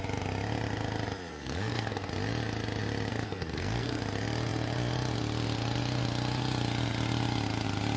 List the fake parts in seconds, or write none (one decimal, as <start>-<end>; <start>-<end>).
1.3-2.1; 3.1-4.0